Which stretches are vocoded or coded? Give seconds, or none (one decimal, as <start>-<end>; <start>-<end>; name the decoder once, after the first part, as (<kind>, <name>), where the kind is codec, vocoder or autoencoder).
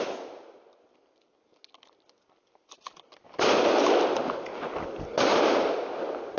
none